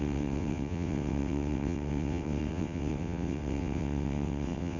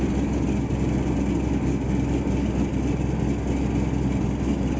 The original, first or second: second